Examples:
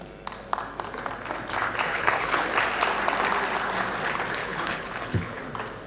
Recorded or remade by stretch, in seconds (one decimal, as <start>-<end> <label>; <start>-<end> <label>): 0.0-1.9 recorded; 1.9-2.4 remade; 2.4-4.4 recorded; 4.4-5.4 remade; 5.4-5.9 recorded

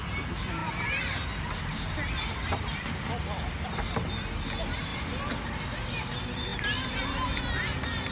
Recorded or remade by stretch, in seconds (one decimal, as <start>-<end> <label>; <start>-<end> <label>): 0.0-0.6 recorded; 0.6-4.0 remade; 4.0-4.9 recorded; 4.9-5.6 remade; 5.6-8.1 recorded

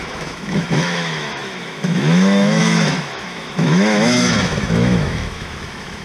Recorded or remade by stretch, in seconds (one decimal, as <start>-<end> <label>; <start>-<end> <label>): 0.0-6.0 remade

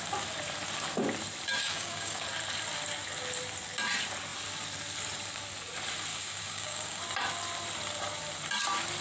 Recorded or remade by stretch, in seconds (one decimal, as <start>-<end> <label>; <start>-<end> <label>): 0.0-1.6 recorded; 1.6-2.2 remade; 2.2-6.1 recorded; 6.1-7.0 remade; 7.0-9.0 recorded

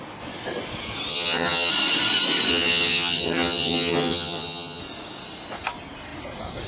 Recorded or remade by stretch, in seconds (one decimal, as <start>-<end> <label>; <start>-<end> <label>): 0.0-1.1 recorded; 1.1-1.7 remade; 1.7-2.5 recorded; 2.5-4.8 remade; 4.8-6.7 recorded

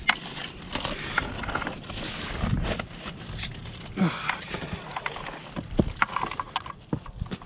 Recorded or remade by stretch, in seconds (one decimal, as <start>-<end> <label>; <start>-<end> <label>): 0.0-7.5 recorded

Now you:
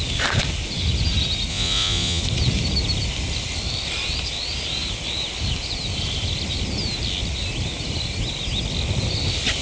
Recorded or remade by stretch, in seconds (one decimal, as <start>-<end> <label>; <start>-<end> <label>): 0.0-1.5 recorded; 1.5-2.2 remade; 2.2-9.6 recorded

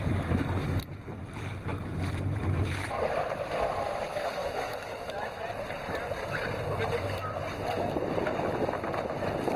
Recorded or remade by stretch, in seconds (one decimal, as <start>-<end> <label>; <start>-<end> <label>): 0.0-4.4 recorded; 4.4-5.4 remade; 5.4-9.6 recorded